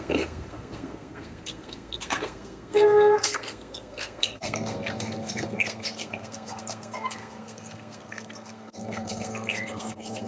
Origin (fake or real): fake